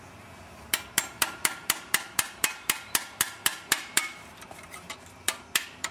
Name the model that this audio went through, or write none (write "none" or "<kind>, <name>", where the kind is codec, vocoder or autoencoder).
vocoder, BigVGAN v2